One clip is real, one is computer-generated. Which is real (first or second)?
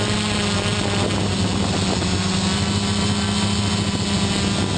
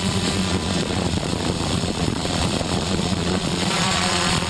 first